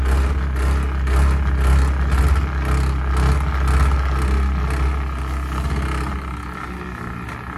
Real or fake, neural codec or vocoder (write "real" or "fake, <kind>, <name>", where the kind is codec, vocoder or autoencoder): real